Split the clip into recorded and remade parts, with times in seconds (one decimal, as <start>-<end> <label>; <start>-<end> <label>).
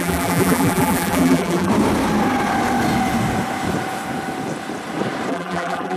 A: 0.0-1.7 remade; 1.7-5.3 recorded; 5.3-6.0 remade